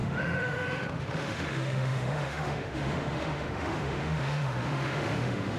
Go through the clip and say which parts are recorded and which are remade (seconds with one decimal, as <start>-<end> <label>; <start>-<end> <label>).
0.0-5.6 remade